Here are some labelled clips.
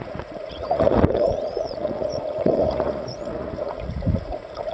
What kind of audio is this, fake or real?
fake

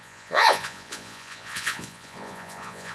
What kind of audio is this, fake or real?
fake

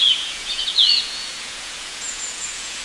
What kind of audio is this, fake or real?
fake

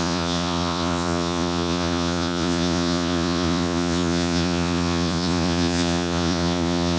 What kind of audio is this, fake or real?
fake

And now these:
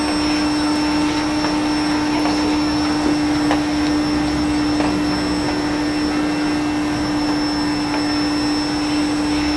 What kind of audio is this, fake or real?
real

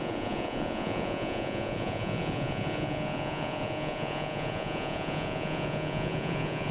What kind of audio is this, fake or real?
fake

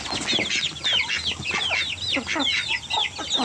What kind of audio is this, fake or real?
real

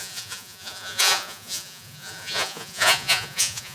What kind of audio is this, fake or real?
fake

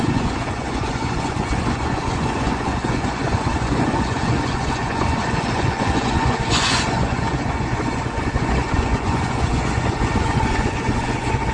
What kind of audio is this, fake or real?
fake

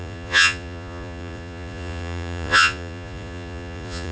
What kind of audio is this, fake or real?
fake